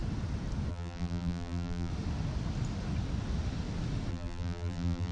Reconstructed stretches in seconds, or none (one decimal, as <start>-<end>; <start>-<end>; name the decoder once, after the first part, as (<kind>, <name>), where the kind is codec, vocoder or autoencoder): 0.7-1.9 (vocoder, BigVGAN v2); 4.1-5.1